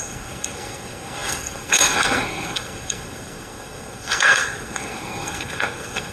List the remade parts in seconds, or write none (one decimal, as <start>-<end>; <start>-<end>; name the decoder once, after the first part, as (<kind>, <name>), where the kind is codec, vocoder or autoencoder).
0.0-6.1 (codec, SNAC)